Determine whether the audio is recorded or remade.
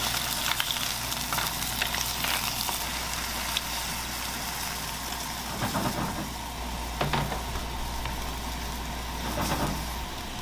recorded